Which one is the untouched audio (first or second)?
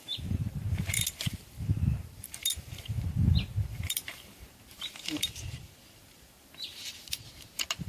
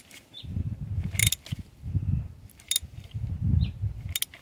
second